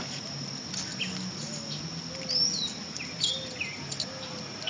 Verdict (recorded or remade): recorded